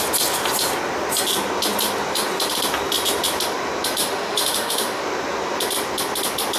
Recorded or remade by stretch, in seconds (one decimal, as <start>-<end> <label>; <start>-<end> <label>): 0.0-4.0 recorded; 4.0-5.0 remade; 5.0-6.6 recorded